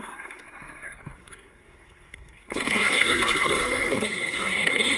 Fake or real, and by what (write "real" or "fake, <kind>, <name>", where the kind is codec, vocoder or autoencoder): fake, codec, SNAC